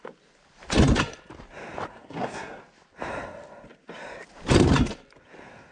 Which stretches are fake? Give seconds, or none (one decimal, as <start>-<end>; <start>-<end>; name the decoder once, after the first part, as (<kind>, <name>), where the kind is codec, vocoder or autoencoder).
1.9-2.6 (codec, SNAC)